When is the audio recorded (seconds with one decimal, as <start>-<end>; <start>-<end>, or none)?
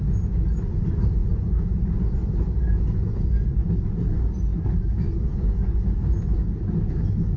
0.0-7.4